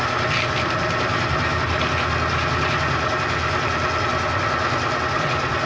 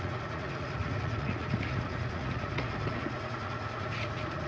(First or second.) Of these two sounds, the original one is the first